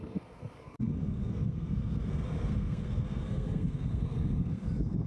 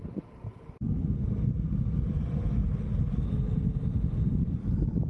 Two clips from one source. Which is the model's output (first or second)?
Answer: first